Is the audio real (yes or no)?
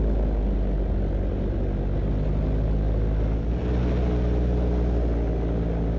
yes